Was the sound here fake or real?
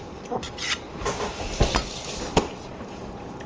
real